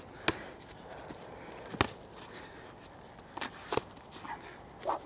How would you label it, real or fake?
real